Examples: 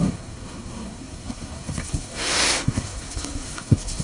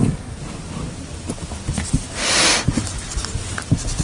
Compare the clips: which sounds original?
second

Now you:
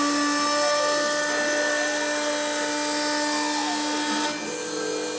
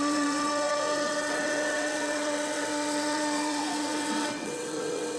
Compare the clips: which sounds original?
first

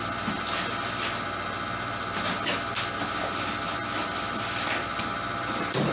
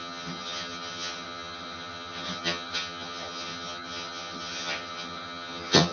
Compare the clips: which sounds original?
first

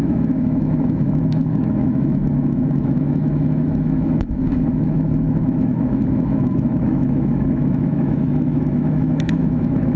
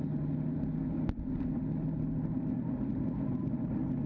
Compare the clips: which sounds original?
second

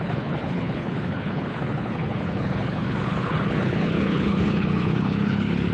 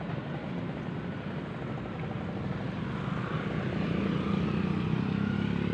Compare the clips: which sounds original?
second